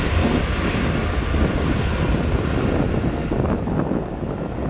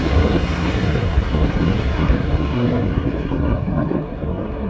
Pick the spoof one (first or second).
second